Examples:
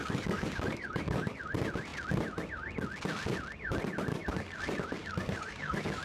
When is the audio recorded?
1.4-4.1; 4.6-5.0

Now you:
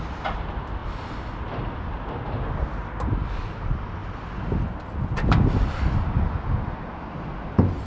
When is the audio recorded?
0.0-7.9